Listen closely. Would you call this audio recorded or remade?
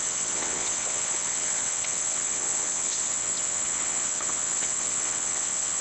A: remade